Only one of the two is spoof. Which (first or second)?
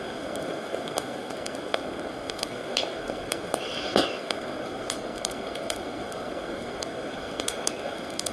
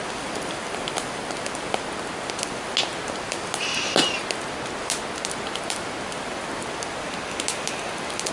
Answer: first